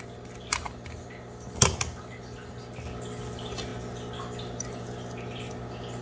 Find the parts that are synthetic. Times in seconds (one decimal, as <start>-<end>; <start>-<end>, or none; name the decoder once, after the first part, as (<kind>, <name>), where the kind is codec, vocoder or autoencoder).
none